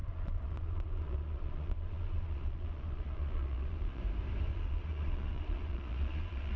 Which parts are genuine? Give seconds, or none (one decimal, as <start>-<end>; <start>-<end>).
4.0-4.5